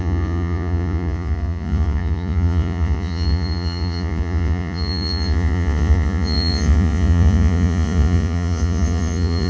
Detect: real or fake fake